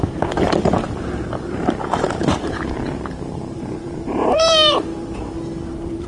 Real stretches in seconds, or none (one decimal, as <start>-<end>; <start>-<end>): 4.9-5.6